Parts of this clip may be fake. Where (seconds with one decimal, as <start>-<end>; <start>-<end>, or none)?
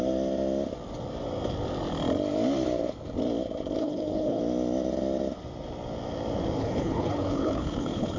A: 3.8-4.4; 6.6-8.2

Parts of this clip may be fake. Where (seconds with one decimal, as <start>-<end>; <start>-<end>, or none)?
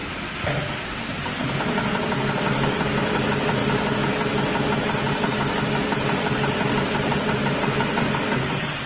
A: none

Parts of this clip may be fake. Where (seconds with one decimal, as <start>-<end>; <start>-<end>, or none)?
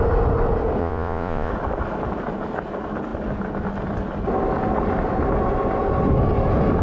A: 0.8-1.5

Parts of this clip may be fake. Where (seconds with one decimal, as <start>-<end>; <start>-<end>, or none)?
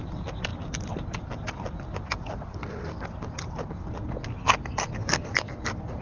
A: none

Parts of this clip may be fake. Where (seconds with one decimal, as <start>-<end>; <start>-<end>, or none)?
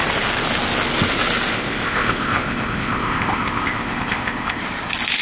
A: 1.5-4.6